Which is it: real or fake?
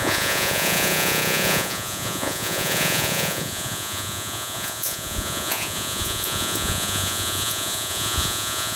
fake